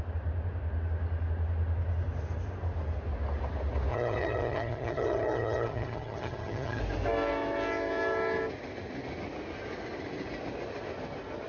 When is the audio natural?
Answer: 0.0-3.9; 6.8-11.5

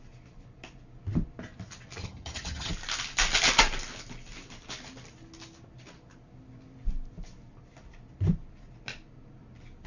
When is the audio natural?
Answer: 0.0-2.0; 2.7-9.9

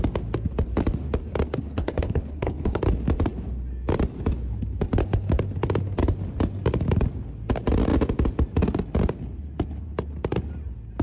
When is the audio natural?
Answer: 0.0-1.6; 2.8-11.0